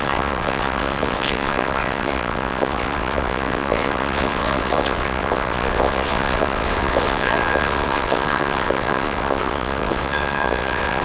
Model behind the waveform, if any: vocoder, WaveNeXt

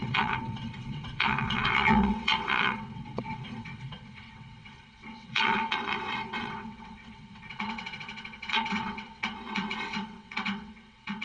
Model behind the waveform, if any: vocoder, WaveNeXt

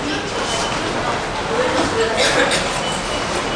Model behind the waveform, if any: none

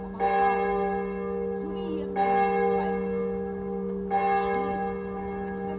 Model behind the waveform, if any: none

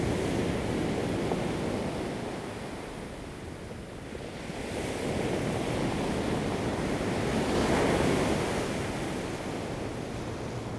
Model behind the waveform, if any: none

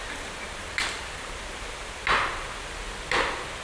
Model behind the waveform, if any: none